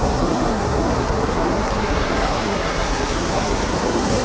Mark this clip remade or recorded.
remade